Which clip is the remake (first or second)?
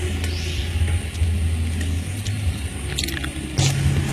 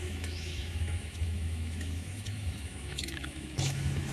second